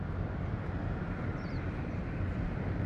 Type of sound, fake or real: real